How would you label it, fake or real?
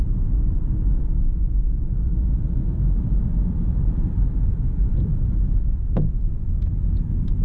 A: fake